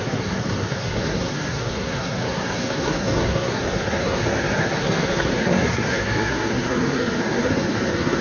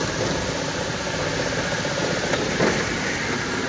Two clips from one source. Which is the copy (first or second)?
first